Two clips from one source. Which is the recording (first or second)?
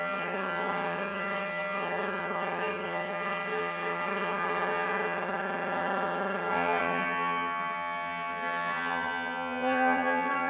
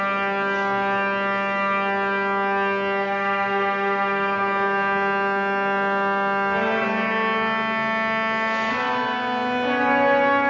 second